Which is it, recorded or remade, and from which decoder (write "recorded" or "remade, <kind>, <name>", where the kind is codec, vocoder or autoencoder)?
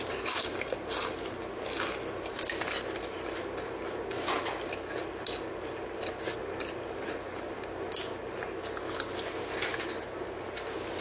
recorded